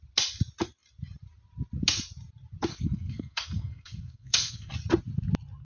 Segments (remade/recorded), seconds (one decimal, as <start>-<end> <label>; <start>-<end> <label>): 0.0-2.7 recorded; 2.7-4.7 remade; 4.7-5.6 recorded